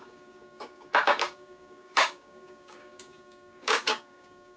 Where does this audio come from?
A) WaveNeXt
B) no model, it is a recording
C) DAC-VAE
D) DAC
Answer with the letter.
D